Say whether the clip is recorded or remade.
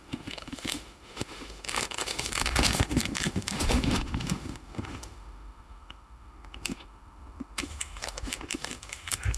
remade